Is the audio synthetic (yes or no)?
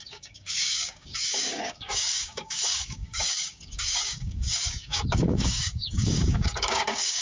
yes